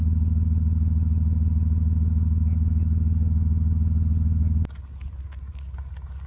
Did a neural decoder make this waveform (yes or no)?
no